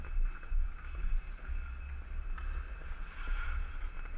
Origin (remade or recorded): recorded